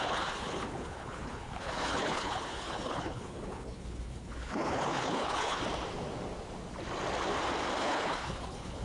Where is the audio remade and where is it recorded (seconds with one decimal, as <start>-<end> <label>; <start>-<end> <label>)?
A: 0.0-5.6 remade; 5.6-7.8 recorded; 7.8-8.8 remade